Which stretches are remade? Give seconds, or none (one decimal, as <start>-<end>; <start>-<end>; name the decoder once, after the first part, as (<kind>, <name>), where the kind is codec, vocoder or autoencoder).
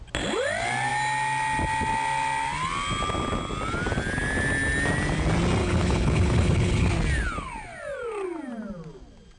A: 5.6-6.9 (codec, HILCodec)